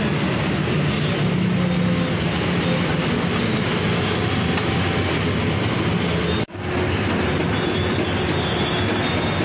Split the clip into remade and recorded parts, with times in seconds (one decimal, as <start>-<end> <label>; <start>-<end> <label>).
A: 0.0-9.4 recorded